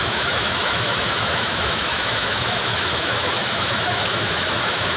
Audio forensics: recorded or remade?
remade